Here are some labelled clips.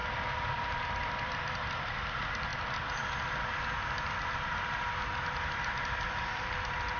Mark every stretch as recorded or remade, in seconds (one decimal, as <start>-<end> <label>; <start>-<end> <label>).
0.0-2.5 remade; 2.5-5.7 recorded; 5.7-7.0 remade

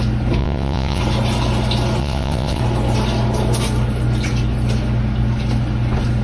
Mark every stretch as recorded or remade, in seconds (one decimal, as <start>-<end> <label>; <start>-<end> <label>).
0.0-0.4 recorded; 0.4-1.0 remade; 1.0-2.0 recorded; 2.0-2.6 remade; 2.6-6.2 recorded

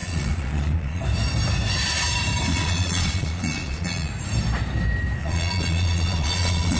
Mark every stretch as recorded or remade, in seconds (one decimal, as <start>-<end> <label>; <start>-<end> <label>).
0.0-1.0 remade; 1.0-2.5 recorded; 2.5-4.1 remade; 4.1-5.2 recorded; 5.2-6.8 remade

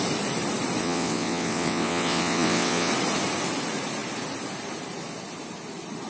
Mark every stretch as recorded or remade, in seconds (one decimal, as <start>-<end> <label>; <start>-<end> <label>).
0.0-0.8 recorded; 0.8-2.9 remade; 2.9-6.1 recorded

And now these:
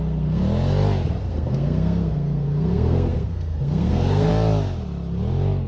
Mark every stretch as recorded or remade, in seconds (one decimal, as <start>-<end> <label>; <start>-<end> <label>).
0.0-0.4 remade; 0.4-1.2 recorded; 1.2-4.3 remade; 4.3-5.7 recorded

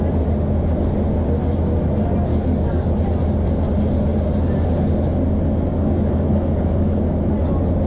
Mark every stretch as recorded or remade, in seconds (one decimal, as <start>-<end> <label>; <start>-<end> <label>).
0.0-2.3 recorded; 2.3-3.0 remade; 3.0-5.7 recorded; 5.7-7.3 remade; 7.3-7.9 recorded

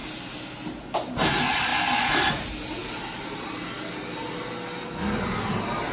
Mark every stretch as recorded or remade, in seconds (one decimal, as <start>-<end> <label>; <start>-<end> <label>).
0.0-0.5 remade; 0.5-2.8 recorded; 2.8-3.5 remade; 3.5-5.9 recorded

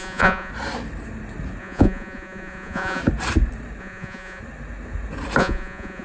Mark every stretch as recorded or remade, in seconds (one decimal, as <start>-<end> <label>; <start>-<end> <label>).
0.0-0.5 remade; 0.5-1.6 recorded; 1.6-3.0 remade; 3.0-3.8 recorded; 3.8-4.4 remade; 4.4-5.4 recorded; 5.4-6.0 remade